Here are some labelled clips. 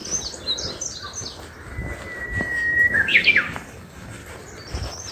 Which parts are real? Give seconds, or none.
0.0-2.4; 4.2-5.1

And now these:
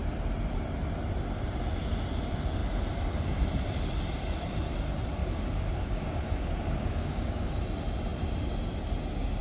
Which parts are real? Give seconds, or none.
0.0-5.2; 7.5-9.4

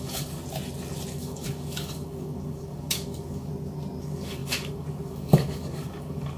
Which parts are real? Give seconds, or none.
0.4-1.1; 3.5-4.0

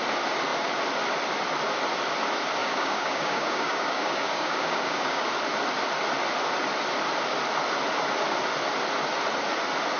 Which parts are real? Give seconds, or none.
0.0-2.6; 5.3-10.0

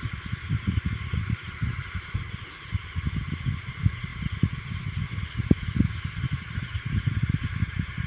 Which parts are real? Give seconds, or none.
0.0-8.1

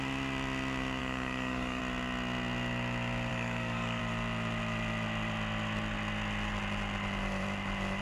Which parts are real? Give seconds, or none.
0.0-1.0; 1.8-3.3; 4.0-8.0